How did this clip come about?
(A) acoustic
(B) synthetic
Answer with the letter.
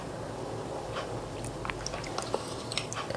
A